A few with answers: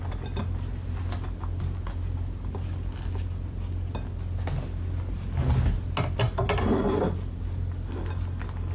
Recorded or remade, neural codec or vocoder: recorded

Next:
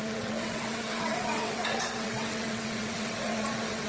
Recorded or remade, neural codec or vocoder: remade, vocoder, WaveNeXt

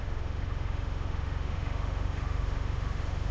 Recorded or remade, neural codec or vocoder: remade, autoencoder, DAC-VAE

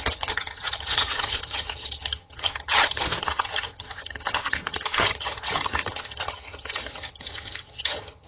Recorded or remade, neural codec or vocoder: remade, vocoder, HiFi-GAN